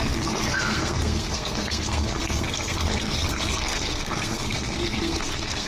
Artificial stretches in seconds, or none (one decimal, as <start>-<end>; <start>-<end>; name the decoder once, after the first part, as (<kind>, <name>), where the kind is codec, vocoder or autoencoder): 0.0-5.7 (codec, SNAC)